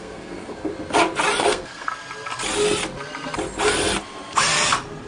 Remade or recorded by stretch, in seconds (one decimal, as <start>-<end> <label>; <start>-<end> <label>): 0.0-0.7 remade; 0.7-1.4 recorded; 1.4-1.9 remade; 1.9-5.1 recorded

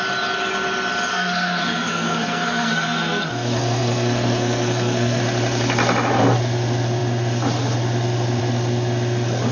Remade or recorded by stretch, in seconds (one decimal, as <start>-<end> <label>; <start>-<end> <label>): 0.0-1.1 recorded; 1.1-5.2 remade; 5.2-9.5 recorded